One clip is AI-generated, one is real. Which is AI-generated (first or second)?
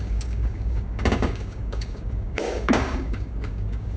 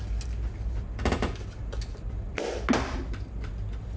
first